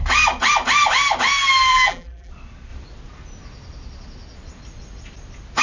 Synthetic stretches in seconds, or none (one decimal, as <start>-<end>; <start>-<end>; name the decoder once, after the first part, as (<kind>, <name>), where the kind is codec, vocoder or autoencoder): 1.7-2.3 (vocoder, BigVGAN v2)